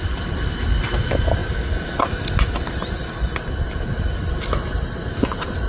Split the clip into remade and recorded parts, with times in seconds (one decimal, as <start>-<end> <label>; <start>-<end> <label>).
0.0-5.7 recorded